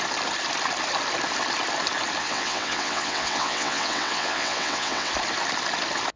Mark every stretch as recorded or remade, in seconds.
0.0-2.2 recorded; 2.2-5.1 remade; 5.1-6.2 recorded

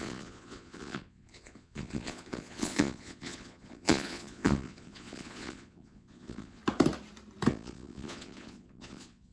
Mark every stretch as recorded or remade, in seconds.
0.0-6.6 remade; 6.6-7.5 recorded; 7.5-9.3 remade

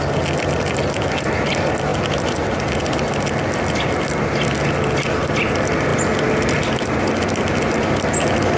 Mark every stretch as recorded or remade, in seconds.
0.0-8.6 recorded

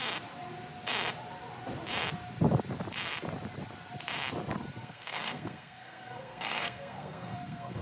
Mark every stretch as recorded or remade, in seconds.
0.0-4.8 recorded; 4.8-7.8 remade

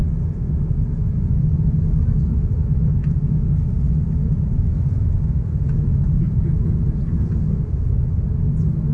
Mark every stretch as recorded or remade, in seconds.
0.0-3.0 recorded; 3.0-3.5 remade; 3.5-4.2 recorded; 4.2-7.9 remade; 7.9-8.9 recorded

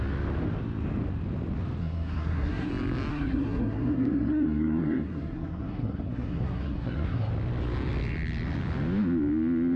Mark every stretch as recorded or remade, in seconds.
0.0-1.8 recorded; 1.8-2.7 remade; 2.7-3.1 recorded; 3.1-7.3 remade; 7.3-9.8 recorded